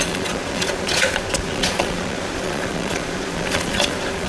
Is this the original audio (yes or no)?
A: no